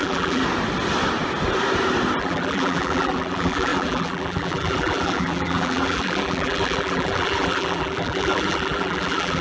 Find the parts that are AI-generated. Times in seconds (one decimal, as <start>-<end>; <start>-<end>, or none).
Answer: 0.0-0.4; 2.2-9.4